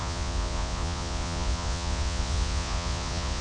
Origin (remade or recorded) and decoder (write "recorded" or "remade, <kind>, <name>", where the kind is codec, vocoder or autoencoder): remade, vocoder, Vocos